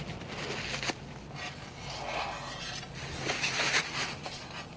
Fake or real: real